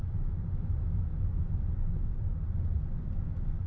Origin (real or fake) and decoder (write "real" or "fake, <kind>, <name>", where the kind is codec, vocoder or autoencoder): fake, vocoder, BigVGAN v2